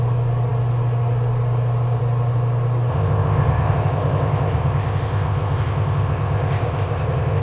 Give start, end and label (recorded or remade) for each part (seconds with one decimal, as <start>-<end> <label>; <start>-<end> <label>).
0.0-2.9 recorded; 2.9-7.4 remade